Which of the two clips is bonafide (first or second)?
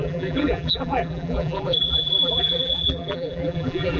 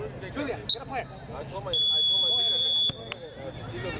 second